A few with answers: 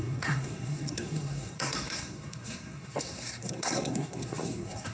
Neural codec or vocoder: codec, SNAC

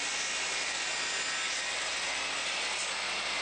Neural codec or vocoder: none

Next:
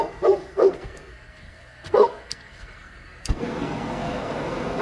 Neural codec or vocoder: codec, SNAC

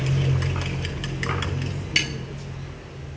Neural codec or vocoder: none